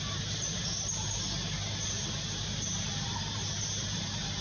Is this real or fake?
fake